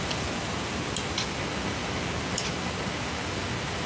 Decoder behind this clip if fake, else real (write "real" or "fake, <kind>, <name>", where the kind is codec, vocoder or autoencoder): real